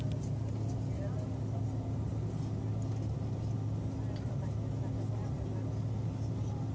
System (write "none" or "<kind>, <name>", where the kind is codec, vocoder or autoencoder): none